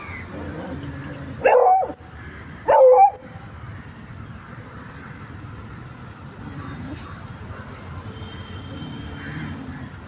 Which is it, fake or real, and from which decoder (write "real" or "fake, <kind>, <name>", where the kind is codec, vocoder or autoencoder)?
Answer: real